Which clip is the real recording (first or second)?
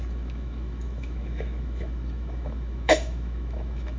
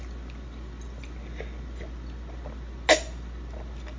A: second